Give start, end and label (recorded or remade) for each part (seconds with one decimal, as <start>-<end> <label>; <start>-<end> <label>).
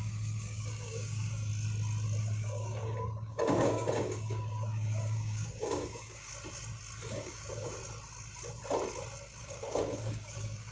0.0-1.5 remade; 1.5-2.2 recorded; 2.2-6.3 remade; 6.3-7.1 recorded; 7.1-7.8 remade; 7.8-9.4 recorded; 9.4-10.7 remade